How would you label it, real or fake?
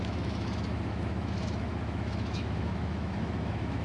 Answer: fake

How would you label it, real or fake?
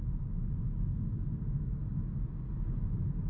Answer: real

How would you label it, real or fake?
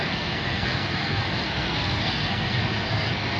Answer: fake